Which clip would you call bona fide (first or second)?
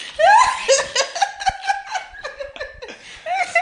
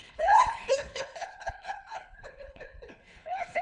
first